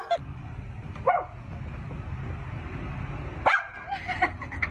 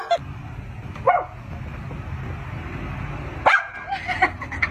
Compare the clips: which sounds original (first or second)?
second